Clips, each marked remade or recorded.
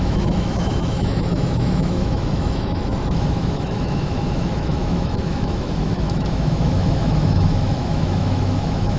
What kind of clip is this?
remade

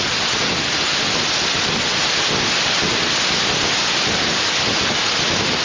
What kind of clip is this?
recorded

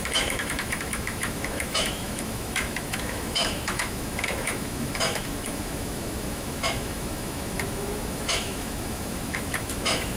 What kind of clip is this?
remade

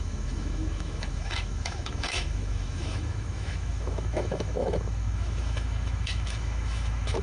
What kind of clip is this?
remade